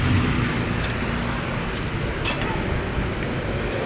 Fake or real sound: real